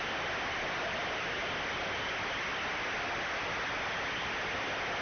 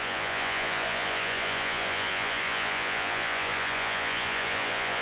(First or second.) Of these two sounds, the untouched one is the first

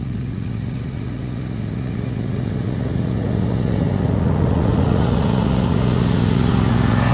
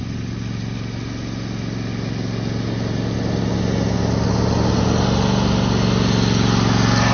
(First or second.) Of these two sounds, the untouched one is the second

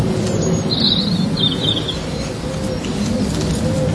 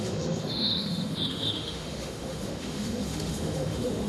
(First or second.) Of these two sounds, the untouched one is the first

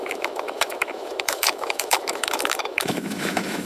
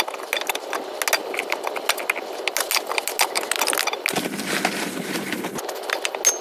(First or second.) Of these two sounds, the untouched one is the second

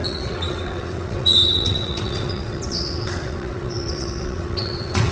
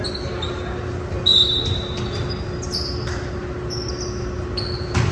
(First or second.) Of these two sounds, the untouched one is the second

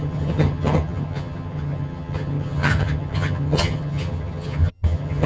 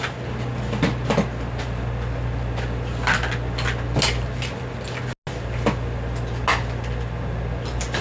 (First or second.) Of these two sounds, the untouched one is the second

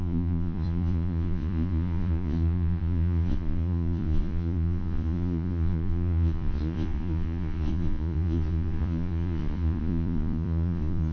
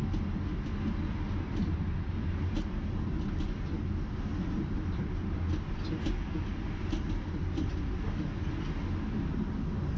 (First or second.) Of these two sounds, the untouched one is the second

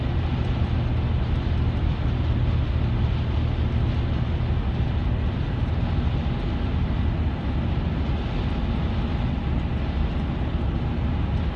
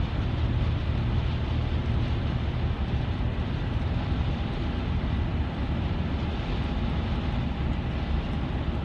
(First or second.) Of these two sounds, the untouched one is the first